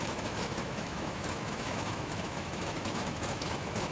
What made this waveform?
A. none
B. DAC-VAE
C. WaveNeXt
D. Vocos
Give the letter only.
B